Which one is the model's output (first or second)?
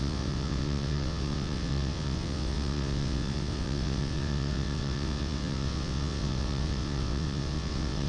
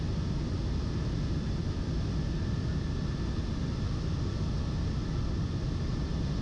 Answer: first